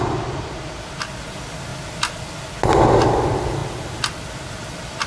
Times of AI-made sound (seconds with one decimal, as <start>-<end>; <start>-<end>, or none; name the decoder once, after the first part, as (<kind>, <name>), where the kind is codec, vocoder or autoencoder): none